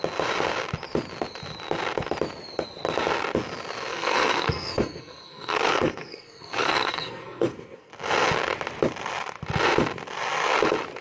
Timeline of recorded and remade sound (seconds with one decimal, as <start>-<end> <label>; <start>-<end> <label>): 0.0-3.9 recorded; 3.9-7.9 remade; 7.9-11.0 recorded

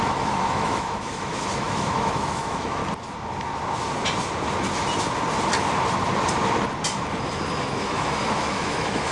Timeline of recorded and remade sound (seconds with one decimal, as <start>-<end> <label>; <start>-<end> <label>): 0.0-2.8 remade; 2.8-7.6 recorded; 7.6-9.1 remade

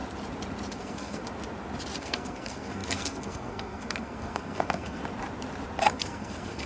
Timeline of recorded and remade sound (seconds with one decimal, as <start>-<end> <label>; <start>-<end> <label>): 0.0-0.7 recorded; 0.7-1.2 remade; 1.2-2.0 recorded; 2.0-5.0 remade; 5.0-5.8 recorded; 5.8-6.7 remade

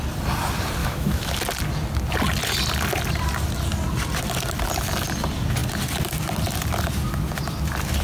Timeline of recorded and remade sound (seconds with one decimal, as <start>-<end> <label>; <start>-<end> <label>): 0.0-0.8 recorded; 0.8-1.4 remade; 1.4-8.0 recorded